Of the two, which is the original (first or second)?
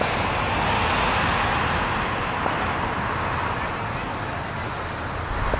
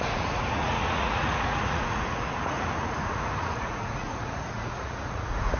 first